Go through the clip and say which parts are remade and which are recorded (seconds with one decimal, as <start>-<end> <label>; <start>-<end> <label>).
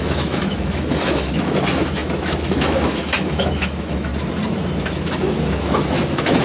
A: 0.0-4.1 remade; 4.1-4.8 recorded; 4.8-6.4 remade